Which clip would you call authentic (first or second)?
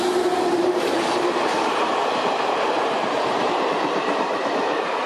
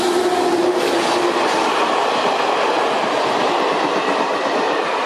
second